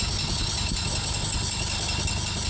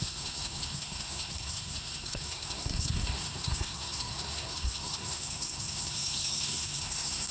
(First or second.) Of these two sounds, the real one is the first